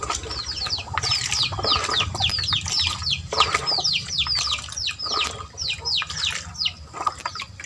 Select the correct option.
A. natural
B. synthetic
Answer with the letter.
A